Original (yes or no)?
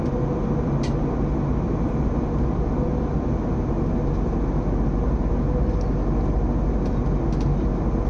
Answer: yes